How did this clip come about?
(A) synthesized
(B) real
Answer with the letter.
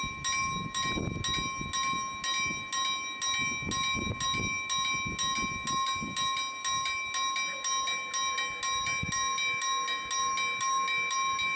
B